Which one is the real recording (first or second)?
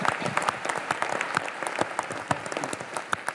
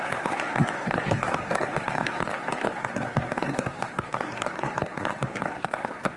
first